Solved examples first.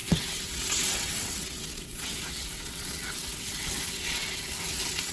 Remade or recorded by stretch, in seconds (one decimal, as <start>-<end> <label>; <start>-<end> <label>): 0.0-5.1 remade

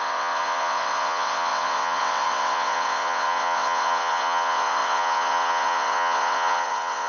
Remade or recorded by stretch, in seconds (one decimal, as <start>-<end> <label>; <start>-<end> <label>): 0.0-7.1 remade

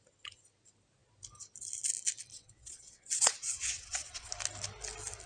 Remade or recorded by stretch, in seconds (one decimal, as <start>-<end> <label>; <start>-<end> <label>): 0.0-2.3 recorded; 2.3-4.3 remade; 4.3-5.3 recorded